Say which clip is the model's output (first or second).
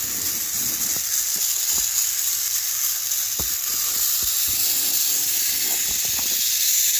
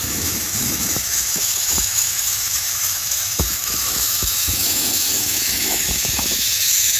second